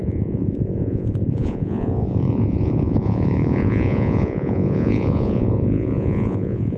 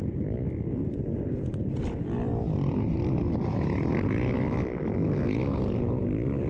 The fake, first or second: first